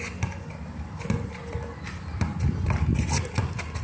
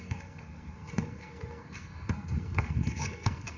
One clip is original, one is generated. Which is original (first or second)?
first